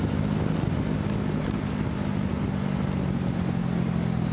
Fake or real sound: real